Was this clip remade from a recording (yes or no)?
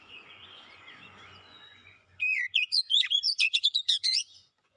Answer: yes